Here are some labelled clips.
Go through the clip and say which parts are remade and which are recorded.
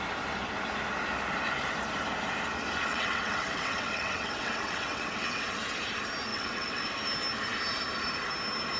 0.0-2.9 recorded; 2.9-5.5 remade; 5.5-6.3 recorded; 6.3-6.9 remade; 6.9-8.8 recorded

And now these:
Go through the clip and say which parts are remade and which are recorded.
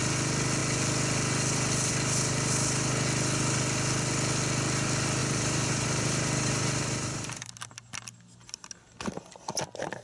0.0-5.2 recorded; 5.2-7.7 remade; 7.7-10.0 recorded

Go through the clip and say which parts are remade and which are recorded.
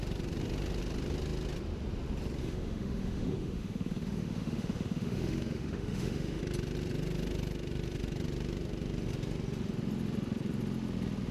0.0-2.4 recorded; 2.4-6.4 remade; 6.4-11.3 recorded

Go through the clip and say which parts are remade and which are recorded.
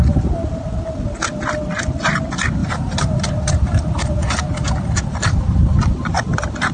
0.0-2.6 recorded; 2.6-6.7 remade